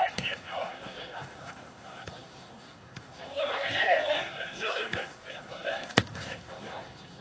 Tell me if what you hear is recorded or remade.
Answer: remade